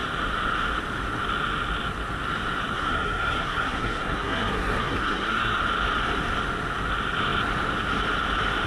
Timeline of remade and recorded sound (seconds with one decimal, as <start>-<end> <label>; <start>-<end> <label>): 0.0-2.7 recorded; 2.7-5.6 remade; 5.6-8.7 recorded